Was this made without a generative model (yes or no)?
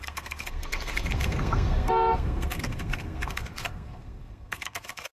no